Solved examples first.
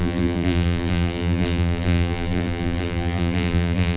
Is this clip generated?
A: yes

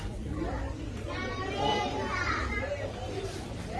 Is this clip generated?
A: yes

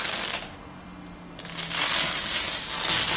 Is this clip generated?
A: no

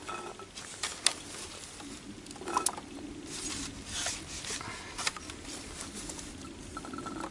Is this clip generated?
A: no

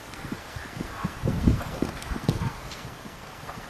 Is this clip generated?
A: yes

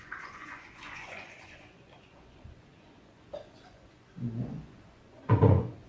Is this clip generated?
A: yes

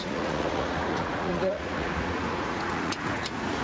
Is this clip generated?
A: yes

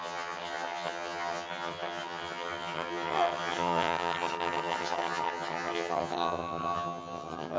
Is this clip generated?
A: yes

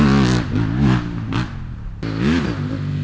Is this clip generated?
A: no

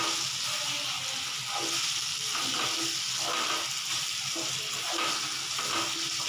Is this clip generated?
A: no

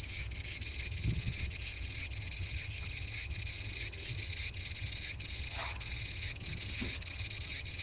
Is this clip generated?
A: yes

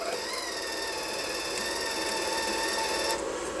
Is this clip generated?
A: no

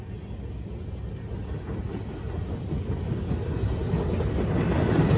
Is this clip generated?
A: no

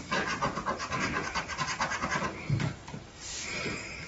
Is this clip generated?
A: yes